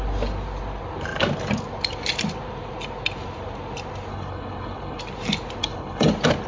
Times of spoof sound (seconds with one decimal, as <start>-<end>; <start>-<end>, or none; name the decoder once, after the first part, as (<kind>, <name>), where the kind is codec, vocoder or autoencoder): 4.1-5.0 (codec, HILCodec); 5.6-6.1